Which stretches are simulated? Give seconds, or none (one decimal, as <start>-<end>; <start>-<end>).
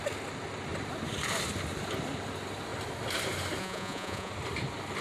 3.6-4.3